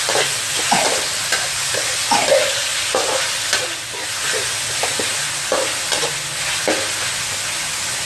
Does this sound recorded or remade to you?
recorded